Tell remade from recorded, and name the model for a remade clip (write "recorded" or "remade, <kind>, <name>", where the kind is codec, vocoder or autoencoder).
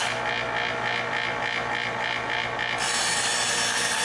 recorded